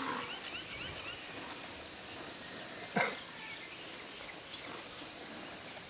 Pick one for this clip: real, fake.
real